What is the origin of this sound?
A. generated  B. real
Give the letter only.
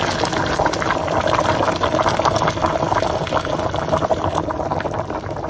A